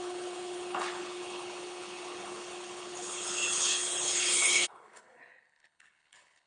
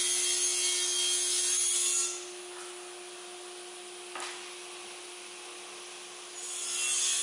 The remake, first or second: first